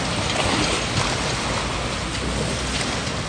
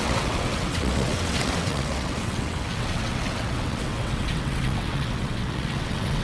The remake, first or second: second